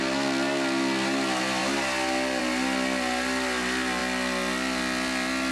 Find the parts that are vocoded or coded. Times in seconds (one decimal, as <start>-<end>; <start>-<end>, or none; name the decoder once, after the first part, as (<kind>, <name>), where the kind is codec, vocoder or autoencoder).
none